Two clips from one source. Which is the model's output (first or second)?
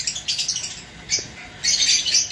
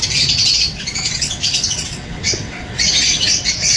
second